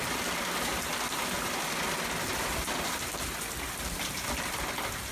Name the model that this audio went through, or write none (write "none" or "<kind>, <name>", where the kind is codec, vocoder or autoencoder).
none